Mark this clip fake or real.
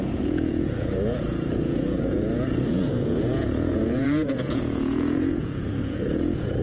fake